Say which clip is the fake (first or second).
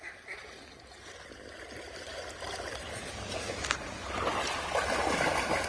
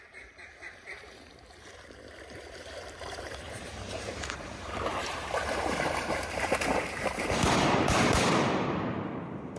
second